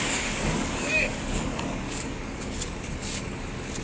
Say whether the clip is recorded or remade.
remade